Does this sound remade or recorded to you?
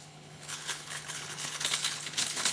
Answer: remade